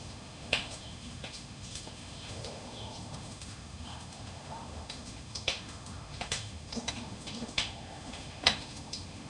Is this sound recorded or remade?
remade